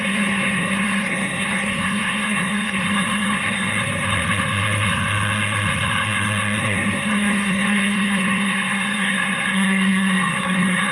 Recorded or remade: remade